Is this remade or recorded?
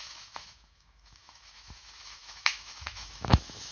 remade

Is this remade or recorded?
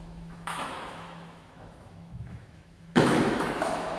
remade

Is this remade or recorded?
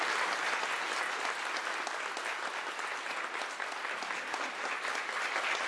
recorded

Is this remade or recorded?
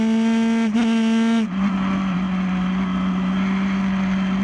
recorded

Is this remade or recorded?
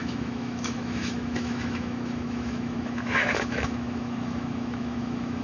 remade